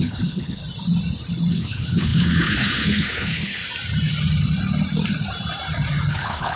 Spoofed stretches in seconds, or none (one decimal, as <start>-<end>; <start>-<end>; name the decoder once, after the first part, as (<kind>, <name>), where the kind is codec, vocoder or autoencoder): 0.0-0.6 (codec, HILCodec); 1.5-3.6; 6.1-6.6